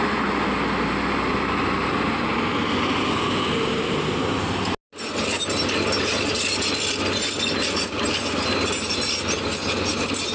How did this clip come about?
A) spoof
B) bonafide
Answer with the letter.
B